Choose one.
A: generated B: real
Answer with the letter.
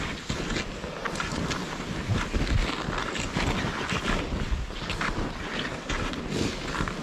B